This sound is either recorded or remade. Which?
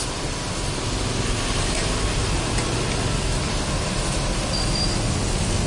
recorded